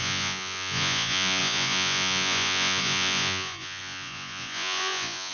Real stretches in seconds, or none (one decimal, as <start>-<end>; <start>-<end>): none

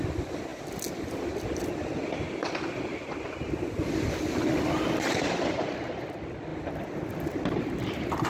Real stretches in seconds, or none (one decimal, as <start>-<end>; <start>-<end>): 0.0-8.3

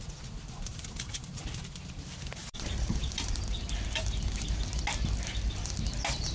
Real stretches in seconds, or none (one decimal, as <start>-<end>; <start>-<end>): 0.0-0.7; 1.6-2.4; 4.8-6.3

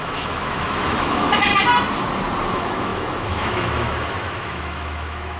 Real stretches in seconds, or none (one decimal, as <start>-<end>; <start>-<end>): 1.5-2.5